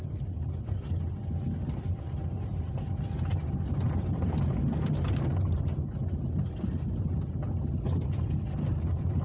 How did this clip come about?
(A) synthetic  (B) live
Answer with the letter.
B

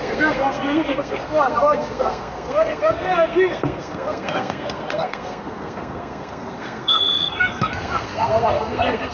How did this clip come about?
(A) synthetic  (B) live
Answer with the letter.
A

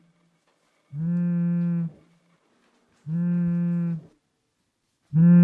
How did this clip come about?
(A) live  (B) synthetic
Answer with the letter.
A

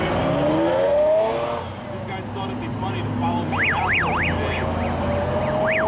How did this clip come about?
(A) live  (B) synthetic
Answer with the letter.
A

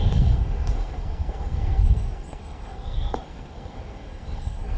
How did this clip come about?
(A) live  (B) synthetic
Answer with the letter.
B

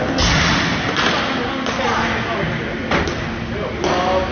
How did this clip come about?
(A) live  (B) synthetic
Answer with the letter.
A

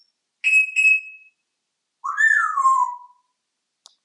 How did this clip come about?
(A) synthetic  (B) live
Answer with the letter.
B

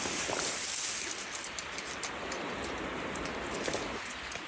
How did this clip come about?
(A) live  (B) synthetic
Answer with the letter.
A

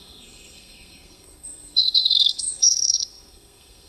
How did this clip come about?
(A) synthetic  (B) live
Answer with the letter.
A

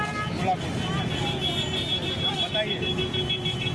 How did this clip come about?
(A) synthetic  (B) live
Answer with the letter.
B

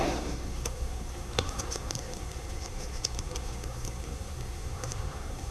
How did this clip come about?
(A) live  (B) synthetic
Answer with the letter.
B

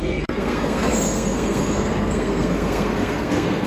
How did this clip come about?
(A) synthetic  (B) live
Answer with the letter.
A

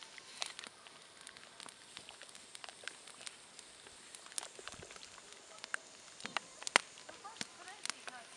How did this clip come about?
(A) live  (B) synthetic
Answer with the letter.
A